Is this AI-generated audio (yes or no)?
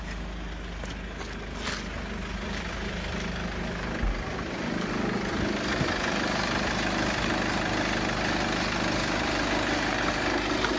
no